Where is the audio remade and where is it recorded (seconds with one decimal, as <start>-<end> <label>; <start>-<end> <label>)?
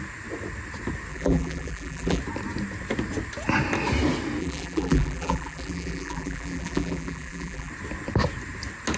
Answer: 0.0-1.1 recorded; 1.1-2.2 remade; 2.2-4.4 recorded; 4.4-7.7 remade; 7.7-9.0 recorded